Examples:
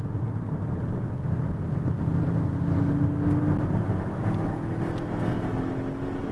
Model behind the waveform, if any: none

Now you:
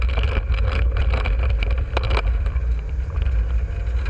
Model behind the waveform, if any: none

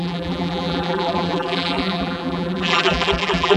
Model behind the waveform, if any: vocoder, BigVGAN v2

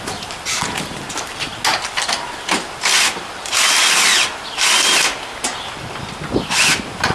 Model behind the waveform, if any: none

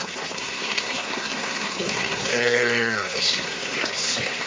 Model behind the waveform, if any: codec, SNAC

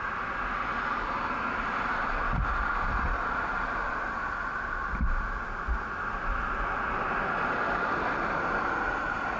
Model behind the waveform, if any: none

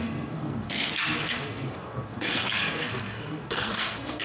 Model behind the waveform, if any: codec, SNAC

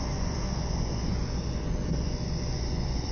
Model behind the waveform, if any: vocoder, Vocos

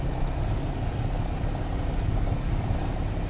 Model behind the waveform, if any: none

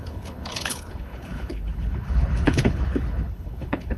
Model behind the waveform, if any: codec, HILCodec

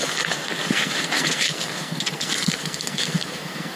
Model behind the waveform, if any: codec, SNAC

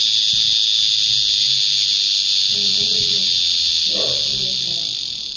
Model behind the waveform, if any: none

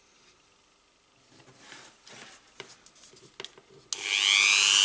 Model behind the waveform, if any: none